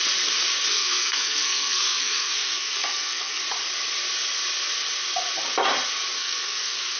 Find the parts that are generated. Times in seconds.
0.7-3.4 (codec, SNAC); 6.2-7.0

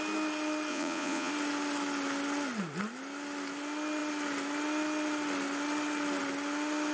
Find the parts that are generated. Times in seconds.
0.7-1.3 (vocoder, Vocos)